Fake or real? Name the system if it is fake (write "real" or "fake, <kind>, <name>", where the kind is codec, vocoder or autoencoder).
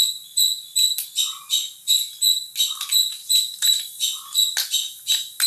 real